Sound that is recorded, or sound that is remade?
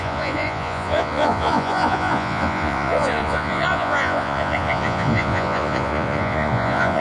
remade